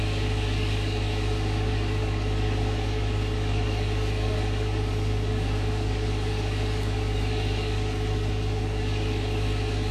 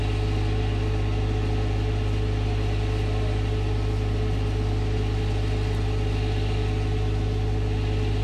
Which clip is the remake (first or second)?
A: first